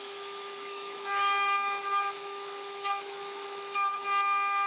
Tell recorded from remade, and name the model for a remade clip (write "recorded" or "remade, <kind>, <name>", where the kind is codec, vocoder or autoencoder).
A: remade, autoencoder, DAC-VAE